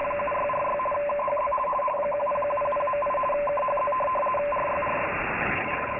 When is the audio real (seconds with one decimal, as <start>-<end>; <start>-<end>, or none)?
0.0-1.2; 2.3-5.4